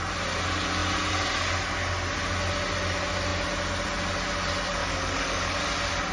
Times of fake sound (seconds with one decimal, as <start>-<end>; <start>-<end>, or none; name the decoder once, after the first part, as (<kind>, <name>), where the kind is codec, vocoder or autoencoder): 4.8-5.6 (codec, DAC)